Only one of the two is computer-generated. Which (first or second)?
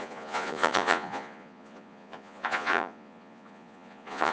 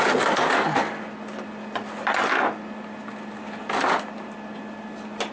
first